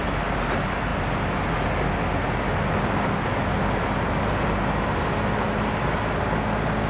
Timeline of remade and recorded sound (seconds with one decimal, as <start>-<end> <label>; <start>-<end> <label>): 0.0-6.9 recorded